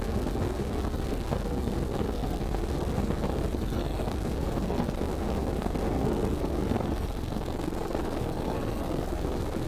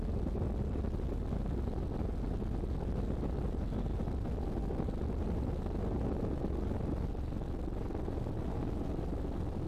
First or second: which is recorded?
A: second